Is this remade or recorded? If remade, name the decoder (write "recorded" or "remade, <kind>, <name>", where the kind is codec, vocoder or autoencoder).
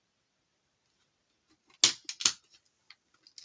recorded